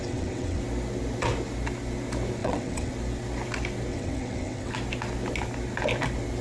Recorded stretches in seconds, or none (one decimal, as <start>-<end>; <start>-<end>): 0.6-2.4; 2.9-3.9; 4.7-6.4